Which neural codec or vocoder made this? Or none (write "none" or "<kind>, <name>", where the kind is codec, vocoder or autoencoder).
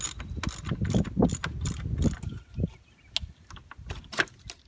none